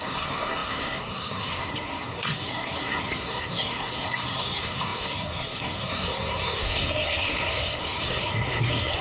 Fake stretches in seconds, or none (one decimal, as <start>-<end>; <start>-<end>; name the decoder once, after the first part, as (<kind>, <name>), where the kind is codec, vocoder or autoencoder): 0.0-9.0 (codec, SNAC)